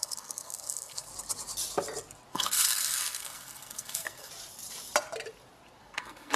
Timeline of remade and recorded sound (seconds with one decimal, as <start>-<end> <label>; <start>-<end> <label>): 0.0-1.1 remade; 1.1-2.3 recorded; 2.3-4.3 remade; 4.3-5.8 recorded; 5.8-6.4 remade